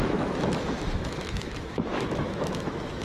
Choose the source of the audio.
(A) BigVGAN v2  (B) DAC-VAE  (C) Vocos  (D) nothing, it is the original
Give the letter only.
B